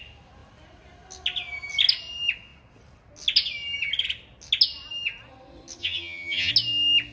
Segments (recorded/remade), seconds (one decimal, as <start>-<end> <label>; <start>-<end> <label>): 0.0-5.8 recorded; 5.8-6.5 remade; 6.5-7.1 recorded